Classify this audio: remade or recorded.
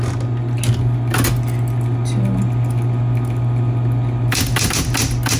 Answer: recorded